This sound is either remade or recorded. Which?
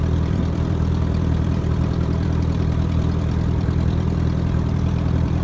remade